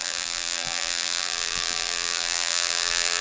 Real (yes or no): no